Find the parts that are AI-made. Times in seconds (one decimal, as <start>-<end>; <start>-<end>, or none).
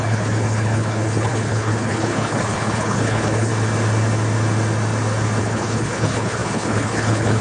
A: 0.0-3.5; 5.4-7.4